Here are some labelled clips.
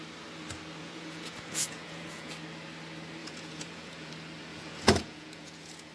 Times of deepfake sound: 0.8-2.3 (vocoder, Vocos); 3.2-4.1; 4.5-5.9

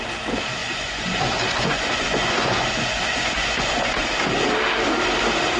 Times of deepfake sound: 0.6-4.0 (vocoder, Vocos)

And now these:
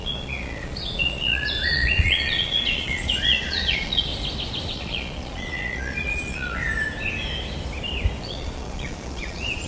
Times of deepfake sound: 0.0-4.1 (vocoder, Vocos); 4.7-6.6; 8.2-9.7